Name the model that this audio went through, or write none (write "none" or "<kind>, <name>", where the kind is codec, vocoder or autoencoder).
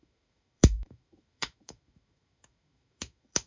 autoencoder, DAC-VAE